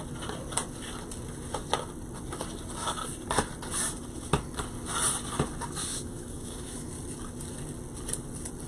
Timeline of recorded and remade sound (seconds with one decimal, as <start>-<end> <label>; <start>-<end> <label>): 0.0-5.8 recorded; 5.8-6.9 remade; 6.9-8.7 recorded